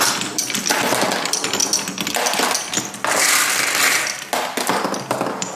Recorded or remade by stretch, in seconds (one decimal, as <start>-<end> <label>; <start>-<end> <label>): 0.0-1.6 remade; 1.6-5.0 recorded; 5.0-5.6 remade